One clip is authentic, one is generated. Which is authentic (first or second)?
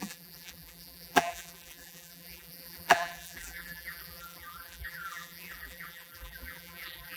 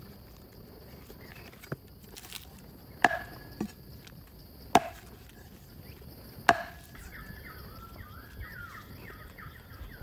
second